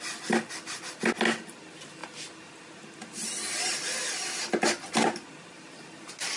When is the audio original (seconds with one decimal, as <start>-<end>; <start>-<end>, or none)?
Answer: 0.0-6.4